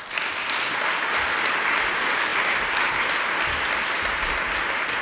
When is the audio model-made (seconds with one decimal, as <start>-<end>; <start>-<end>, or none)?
none